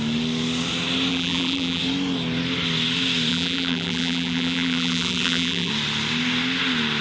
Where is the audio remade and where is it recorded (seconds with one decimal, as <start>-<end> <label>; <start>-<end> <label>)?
0.0-1.1 recorded; 1.1-1.8 remade; 1.8-3.3 recorded; 3.3-5.7 remade; 5.7-7.0 recorded